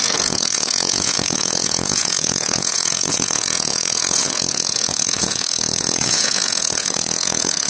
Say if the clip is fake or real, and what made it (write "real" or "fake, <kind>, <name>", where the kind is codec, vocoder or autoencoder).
fake, vocoder, Vocos